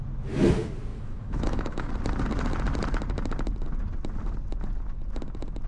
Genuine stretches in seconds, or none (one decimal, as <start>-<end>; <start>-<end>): 0.0-0.9; 1.9-5.7